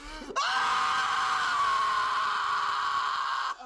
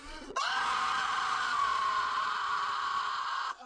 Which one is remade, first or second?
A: second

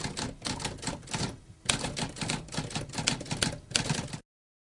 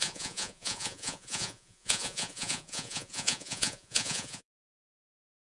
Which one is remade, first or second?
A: second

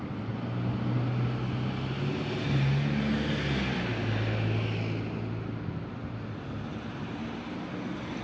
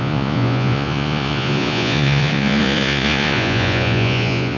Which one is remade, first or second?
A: second